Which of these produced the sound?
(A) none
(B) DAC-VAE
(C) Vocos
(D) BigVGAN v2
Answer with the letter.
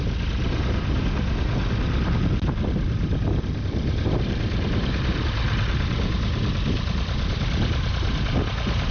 A